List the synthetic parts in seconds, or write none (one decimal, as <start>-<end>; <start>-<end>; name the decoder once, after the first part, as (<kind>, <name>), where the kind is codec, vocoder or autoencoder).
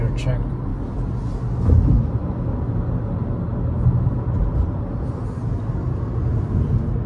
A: none